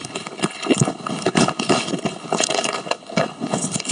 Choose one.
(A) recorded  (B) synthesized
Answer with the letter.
B